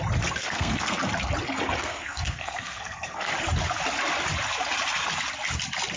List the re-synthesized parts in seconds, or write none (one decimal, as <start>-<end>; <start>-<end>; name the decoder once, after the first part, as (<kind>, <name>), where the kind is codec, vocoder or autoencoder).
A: 0.4-1.0 (codec, SNAC); 1.8-3.3